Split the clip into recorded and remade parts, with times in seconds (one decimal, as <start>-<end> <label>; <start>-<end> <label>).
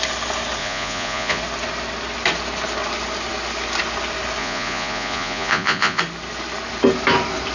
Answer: 0.0-0.6 recorded; 0.6-1.4 remade; 1.4-4.4 recorded; 4.4-6.0 remade; 6.0-7.5 recorded